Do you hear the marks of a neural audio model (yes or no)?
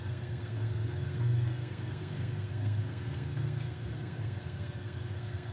yes